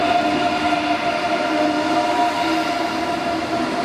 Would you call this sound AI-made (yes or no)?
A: no